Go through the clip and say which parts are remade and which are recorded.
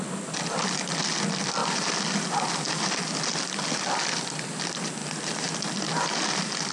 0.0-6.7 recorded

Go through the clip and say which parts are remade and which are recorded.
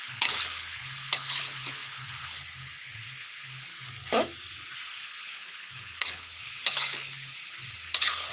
0.0-3.7 remade; 3.7-4.9 recorded; 4.9-8.3 remade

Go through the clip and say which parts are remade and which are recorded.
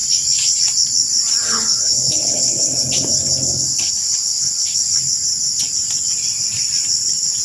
0.0-1.4 recorded; 1.4-5.0 remade; 5.0-7.4 recorded